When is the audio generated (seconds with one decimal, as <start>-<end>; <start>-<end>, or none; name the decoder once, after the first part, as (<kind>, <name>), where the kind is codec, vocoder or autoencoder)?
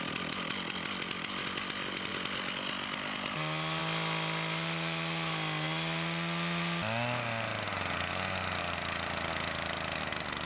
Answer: none